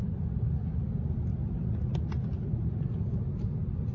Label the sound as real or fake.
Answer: real